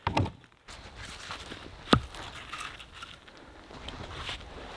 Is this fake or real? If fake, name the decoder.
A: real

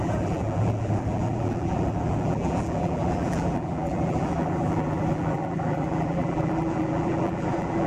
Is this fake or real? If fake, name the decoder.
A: fake, vocoder, BigVGAN v2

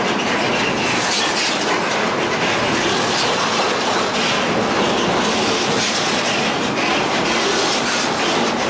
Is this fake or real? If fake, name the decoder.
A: real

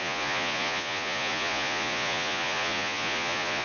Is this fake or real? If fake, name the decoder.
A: fake, vocoder, Vocos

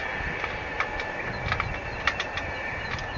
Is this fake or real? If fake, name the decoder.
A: real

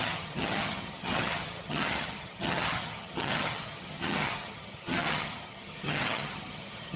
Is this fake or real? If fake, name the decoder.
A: fake, vocoder, HiFi-GAN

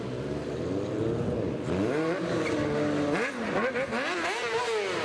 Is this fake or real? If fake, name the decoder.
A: real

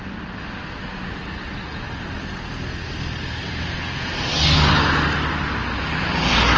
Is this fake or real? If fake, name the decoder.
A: real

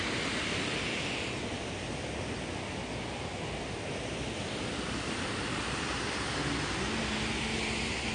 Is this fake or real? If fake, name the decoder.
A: real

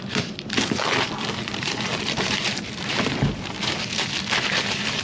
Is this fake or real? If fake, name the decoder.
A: fake, vocoder, BigVGAN v2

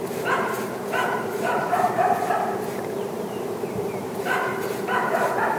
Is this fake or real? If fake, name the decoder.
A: fake, vocoder, BigVGAN v2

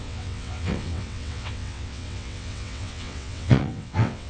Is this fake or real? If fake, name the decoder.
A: fake, vocoder, WaveNeXt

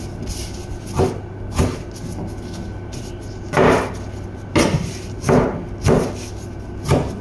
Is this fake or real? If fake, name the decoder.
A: real